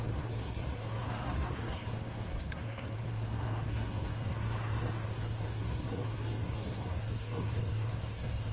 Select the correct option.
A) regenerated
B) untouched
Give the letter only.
A